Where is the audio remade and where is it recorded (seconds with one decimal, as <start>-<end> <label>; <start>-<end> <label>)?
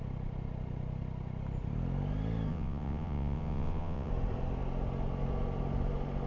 0.0-2.5 recorded; 2.5-4.1 remade; 4.1-6.3 recorded